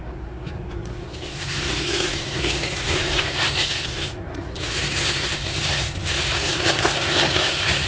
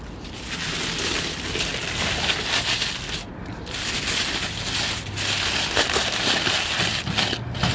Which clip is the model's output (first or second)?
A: first